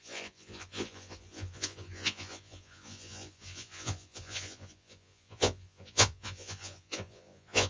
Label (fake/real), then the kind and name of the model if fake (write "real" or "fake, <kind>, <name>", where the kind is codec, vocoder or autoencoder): fake, vocoder, Vocos